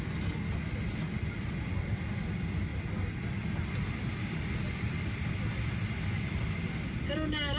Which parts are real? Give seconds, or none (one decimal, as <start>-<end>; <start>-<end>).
0.0-7.6